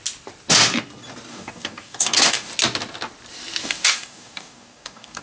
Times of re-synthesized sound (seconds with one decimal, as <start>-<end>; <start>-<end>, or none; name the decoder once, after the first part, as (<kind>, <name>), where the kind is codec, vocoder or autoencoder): 1.3-2.5 (codec, DAC); 3.6-5.2